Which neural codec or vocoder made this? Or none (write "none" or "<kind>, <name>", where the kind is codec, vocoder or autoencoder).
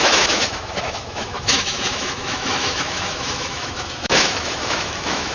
autoencoder, DAC-VAE